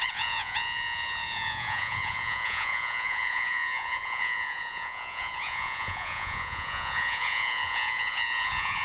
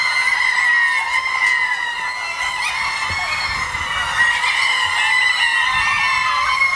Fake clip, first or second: first